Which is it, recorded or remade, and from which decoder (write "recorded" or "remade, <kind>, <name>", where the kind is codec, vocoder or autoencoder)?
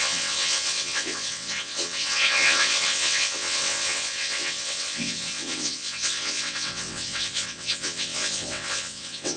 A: remade, vocoder, WaveNeXt